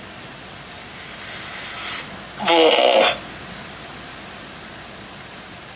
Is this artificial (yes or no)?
no